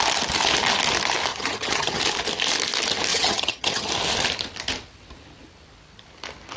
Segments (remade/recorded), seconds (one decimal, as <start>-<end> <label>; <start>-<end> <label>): 0.0-1.3 recorded; 1.3-2.0 remade; 2.0-3.1 recorded; 3.1-3.9 remade; 3.9-6.6 recorded